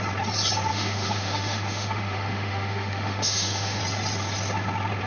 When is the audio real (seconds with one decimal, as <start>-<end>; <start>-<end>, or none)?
0.0-0.7; 3.8-5.1